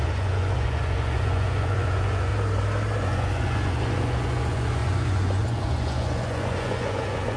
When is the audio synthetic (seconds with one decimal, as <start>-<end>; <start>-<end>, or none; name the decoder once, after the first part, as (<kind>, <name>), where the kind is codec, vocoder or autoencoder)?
0.0-2.3 (vocoder, Vocos); 3.0-7.4